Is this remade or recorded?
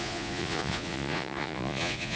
remade